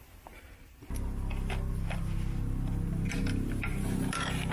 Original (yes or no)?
yes